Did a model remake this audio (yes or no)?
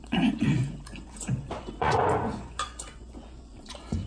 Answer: yes